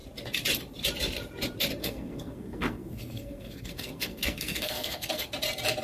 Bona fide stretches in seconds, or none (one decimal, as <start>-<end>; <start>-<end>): 0.0-1.8; 5.3-5.8